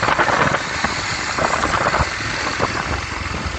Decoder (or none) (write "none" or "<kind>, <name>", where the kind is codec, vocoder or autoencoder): none